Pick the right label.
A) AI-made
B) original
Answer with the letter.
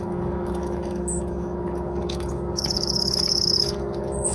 A